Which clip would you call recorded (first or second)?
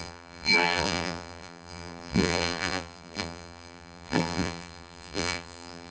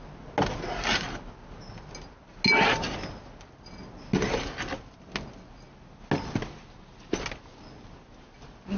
second